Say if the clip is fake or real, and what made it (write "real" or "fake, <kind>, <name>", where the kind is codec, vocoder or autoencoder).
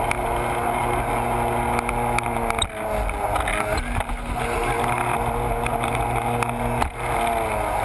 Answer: real